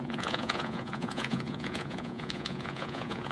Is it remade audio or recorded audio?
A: remade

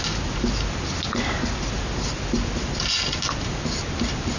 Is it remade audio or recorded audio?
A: recorded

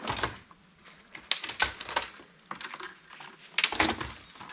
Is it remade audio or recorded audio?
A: recorded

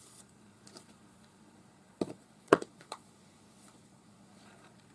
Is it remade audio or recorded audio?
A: remade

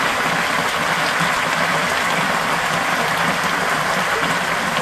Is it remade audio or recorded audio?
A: recorded